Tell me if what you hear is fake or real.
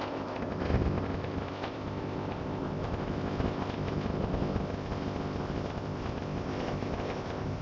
fake